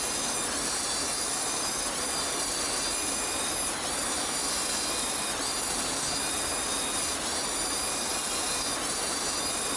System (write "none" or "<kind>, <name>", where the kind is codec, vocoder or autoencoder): none